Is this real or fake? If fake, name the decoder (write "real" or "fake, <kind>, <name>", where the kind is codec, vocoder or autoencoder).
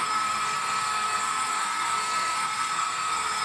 fake, codec, SNAC